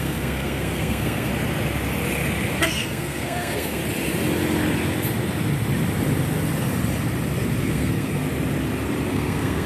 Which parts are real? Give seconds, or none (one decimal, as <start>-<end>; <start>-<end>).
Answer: 1.3-2.6; 3.8-7.6; 8.2-9.1